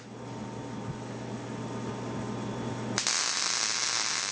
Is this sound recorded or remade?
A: recorded